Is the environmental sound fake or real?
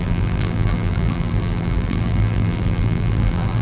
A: fake